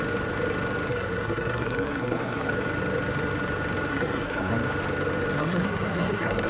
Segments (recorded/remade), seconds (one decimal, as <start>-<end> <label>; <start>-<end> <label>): 0.0-0.9 recorded; 0.9-2.5 remade; 2.5-3.9 recorded; 3.9-4.5 remade; 4.5-5.4 recorded; 5.4-6.5 remade